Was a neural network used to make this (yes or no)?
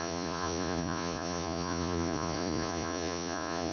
yes